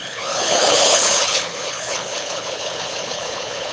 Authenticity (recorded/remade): remade